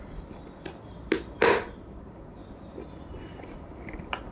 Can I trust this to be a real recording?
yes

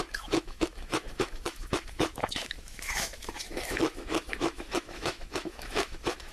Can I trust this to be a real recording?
no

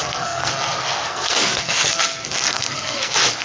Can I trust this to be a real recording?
no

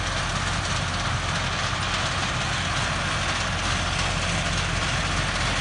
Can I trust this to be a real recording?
yes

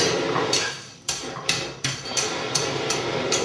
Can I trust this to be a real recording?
no